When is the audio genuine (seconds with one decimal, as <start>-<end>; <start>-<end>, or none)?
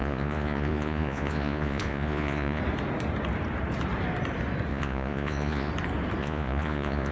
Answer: 2.6-4.7; 5.7-6.2